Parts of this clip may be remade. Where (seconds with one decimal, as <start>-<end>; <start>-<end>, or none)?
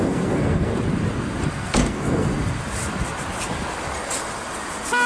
0.0-0.7; 1.5-2.3